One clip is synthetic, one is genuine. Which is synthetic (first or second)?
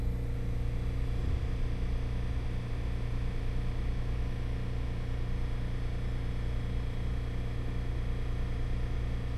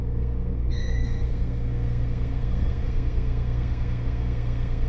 second